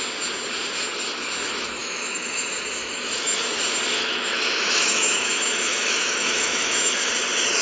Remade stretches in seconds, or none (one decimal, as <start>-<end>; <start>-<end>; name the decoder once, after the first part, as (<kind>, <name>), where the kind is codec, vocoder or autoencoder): 1.8-2.4 (autoencoder, DAC-VAE); 2.8-3.4; 3.9-7.1